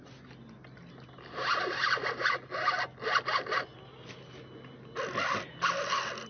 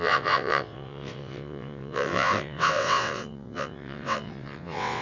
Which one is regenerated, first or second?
second